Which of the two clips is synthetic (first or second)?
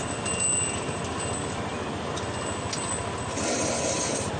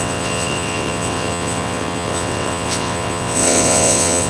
second